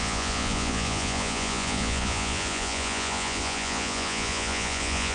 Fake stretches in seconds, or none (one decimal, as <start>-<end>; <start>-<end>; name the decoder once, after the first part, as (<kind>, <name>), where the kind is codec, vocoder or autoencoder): 0.0-5.1 (vocoder, Vocos)